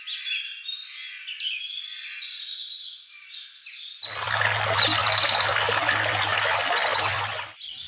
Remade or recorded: recorded